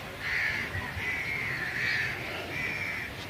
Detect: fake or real real